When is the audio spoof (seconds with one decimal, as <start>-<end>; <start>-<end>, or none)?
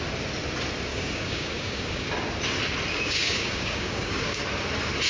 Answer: 0.9-2.1; 2.9-4.4